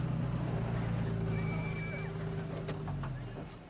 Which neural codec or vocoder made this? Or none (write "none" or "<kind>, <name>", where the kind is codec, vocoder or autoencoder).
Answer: none